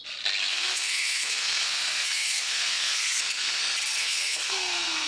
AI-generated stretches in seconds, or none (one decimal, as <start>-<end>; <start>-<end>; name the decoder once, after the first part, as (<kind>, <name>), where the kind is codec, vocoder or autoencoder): 0.5-3.6 (codec, SNAC); 4.0-5.1